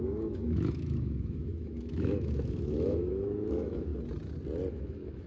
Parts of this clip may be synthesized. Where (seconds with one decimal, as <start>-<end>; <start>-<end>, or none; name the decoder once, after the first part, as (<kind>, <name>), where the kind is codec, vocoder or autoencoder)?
0.0-3.9 (autoencoder, DAC-VAE); 4.7-5.3